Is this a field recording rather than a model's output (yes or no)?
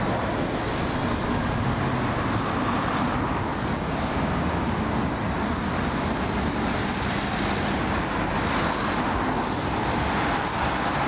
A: yes